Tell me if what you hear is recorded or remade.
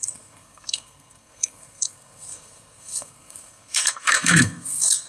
remade